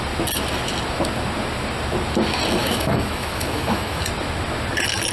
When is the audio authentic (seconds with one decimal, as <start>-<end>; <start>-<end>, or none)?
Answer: 0.0-2.6; 4.0-5.1